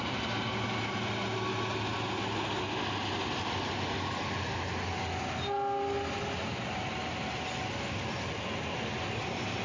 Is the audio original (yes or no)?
yes